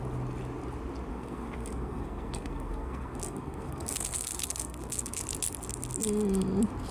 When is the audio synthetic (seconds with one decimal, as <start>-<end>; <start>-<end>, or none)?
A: 1.1-5.2